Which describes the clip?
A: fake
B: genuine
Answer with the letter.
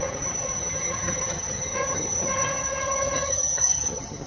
A